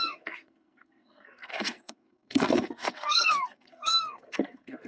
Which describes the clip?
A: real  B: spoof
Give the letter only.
B